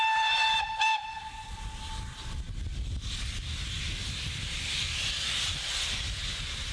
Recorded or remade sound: recorded